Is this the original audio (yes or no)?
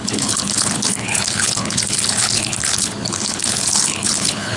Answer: no